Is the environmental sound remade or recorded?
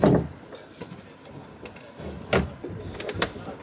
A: recorded